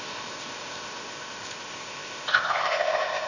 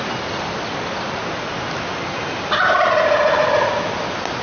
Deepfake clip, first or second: first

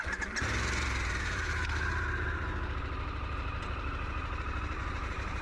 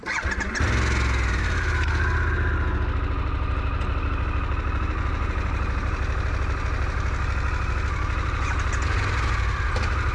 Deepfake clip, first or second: first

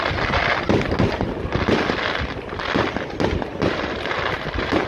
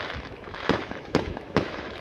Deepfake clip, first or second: second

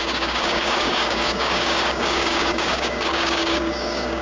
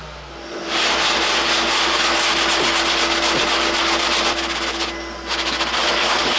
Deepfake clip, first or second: first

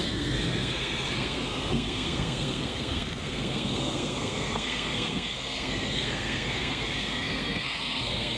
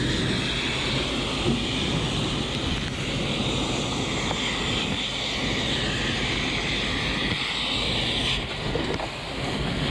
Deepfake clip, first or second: first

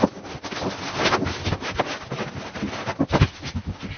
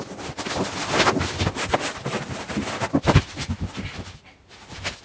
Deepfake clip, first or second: second